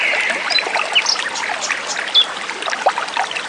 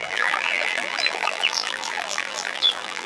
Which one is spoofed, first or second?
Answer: second